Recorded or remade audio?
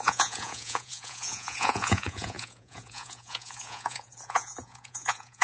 remade